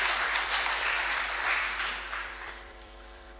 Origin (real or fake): fake